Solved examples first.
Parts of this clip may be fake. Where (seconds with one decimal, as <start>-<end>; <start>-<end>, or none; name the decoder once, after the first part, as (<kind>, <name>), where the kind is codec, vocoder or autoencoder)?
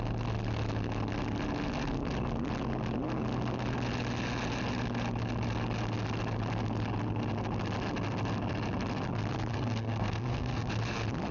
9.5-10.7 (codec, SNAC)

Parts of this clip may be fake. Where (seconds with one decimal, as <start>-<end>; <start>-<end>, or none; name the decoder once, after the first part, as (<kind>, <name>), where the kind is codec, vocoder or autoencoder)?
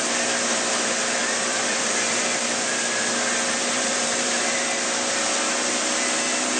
1.2-2.2 (vocoder, BigVGAN v2); 3.6-5.1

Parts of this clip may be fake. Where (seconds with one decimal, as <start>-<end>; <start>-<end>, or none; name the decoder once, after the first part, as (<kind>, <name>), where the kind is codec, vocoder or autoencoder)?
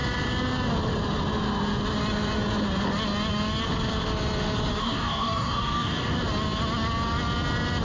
4.8-6.2 (codec, DAC)